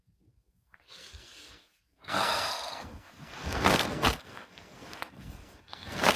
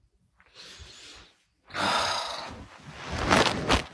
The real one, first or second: second